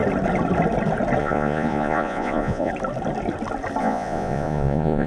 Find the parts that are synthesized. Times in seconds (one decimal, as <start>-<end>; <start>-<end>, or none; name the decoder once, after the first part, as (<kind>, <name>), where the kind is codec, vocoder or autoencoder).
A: 1.2-2.7 (vocoder, Vocos); 3.8-5.1